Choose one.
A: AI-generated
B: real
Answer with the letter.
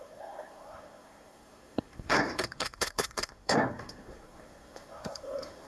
A